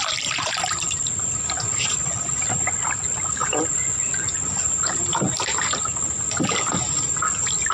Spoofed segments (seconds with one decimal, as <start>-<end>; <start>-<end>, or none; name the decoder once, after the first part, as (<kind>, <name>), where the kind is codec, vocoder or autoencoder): none